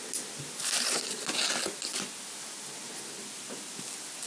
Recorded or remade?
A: recorded